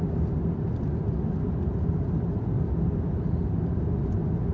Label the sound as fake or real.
real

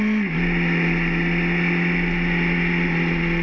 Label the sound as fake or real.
real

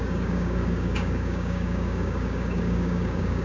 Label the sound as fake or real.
fake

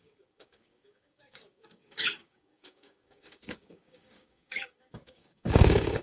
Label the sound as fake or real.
fake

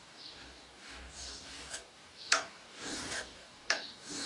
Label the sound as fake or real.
fake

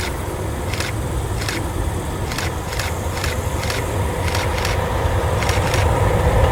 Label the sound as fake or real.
real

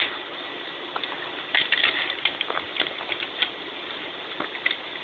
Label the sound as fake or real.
real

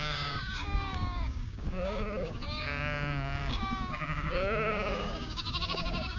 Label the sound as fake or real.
fake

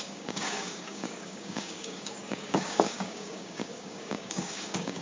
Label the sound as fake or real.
fake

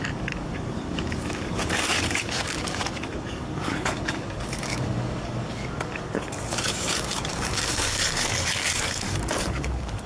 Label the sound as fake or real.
fake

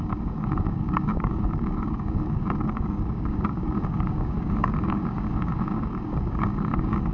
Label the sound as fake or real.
fake